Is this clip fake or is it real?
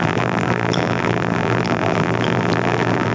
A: fake